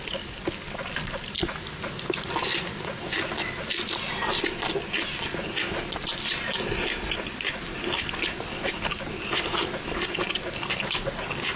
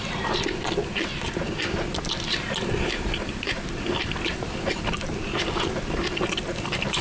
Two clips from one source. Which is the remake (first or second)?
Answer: second